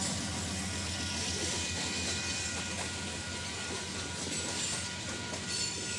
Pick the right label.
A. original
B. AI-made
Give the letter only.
A